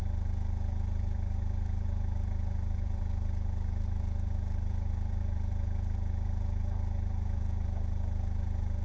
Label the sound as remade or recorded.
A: remade